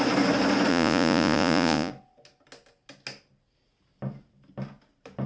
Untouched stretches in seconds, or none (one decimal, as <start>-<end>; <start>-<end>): 0.0-0.7; 1.9-5.3